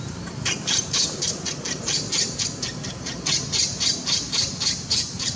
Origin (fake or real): real